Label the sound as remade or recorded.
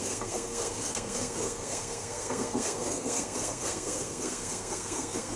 remade